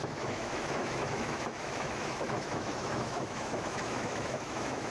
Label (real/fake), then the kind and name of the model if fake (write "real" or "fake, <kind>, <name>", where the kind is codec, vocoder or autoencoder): fake, autoencoder, DAC-VAE